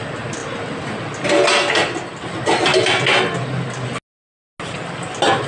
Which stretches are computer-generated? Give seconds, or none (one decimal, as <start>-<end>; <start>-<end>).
none